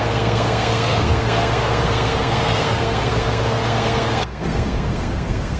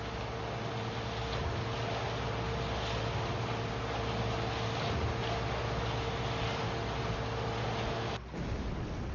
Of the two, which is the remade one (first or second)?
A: first